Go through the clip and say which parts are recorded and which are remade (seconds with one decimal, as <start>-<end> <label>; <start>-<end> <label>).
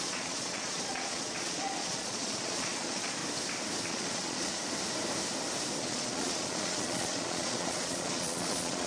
0.0-3.2 remade; 3.2-3.8 recorded; 3.8-4.6 remade; 4.6-5.8 recorded; 5.8-8.9 remade